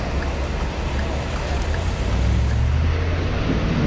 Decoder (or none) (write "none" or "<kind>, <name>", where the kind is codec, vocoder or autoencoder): none